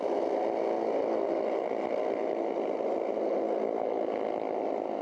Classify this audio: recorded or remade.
recorded